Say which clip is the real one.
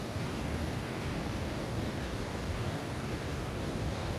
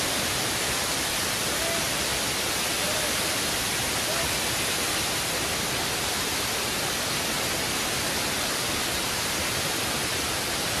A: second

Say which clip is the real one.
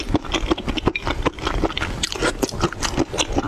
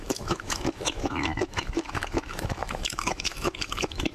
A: first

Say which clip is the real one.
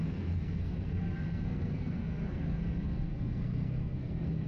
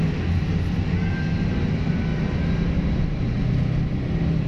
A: second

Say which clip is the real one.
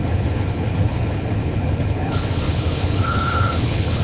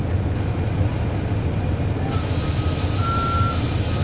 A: second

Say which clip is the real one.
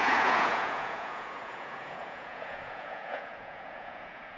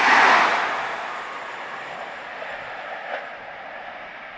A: second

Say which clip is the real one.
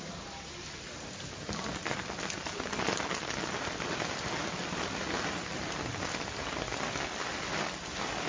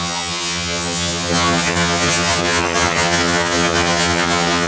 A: first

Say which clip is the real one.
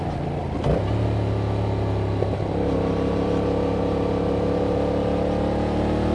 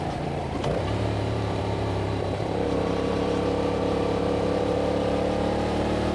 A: first